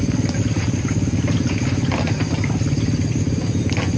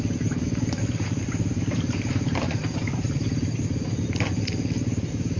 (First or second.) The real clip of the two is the first